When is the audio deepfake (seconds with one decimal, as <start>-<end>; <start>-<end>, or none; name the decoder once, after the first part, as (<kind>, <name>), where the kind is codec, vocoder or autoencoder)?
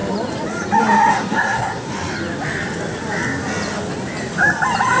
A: 1.1-1.9 (codec, SNAC)